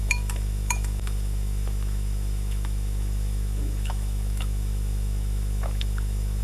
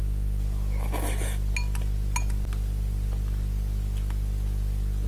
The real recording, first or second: second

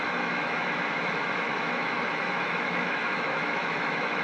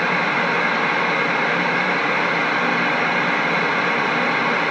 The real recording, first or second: second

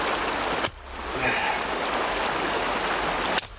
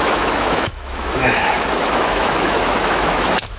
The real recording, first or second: first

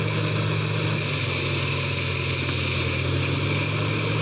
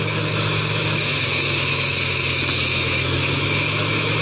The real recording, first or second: first